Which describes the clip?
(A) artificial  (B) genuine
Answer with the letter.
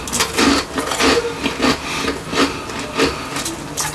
B